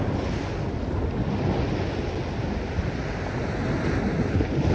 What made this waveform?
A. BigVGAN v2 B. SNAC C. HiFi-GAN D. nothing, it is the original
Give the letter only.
D